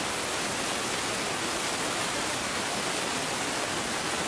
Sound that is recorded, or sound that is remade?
recorded